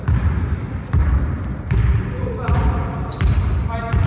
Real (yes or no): yes